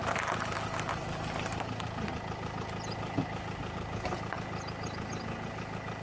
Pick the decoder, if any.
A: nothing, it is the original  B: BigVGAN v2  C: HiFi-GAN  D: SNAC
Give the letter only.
A